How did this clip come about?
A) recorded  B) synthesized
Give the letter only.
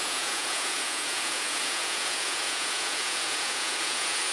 B